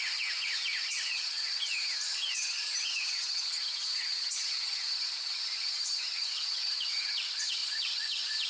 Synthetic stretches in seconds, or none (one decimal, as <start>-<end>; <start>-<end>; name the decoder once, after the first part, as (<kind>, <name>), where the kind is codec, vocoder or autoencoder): 0.0-8.5 (vocoder, HiFi-GAN)